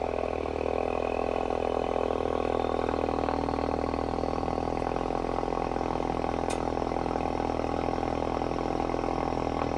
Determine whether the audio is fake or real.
real